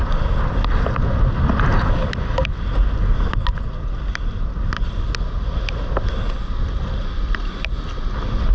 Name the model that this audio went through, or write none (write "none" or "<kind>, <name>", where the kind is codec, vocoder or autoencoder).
none